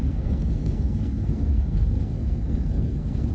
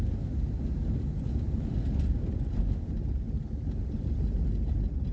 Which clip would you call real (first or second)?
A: second